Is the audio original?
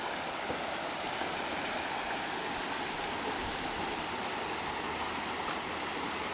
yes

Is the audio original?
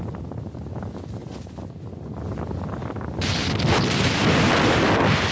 yes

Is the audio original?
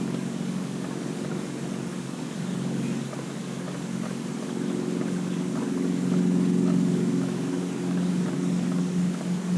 no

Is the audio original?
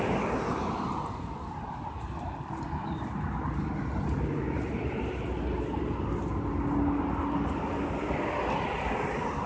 yes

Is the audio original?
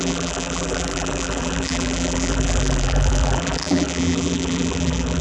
no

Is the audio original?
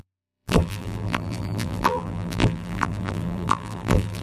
no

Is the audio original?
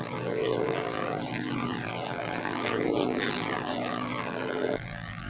no